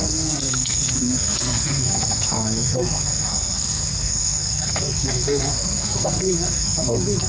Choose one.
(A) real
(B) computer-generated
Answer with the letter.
B